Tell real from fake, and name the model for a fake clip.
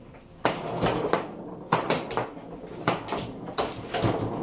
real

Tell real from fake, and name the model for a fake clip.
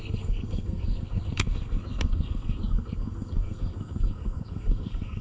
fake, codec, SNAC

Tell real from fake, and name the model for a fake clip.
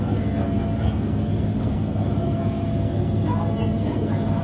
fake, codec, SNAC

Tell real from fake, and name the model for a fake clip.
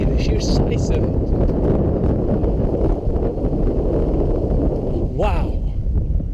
real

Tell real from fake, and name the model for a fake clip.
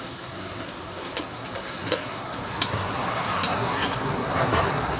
fake, codec, SNAC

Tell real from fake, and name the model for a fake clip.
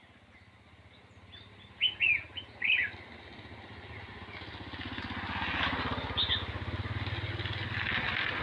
real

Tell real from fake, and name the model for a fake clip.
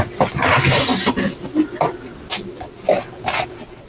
real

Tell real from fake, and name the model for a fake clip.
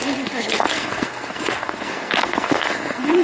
fake, codec, SNAC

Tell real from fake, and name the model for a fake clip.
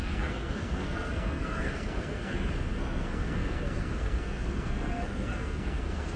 fake, codec, SNAC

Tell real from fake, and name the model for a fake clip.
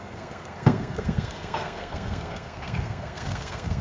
fake, codec, SNAC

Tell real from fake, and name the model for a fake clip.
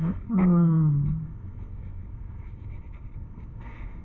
fake, codec, SNAC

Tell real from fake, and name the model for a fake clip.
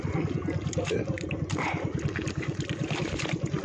real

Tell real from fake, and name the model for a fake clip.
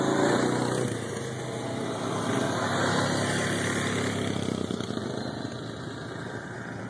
real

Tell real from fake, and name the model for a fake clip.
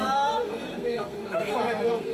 fake, codec, SNAC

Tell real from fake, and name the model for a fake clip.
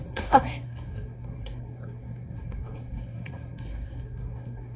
fake, codec, SNAC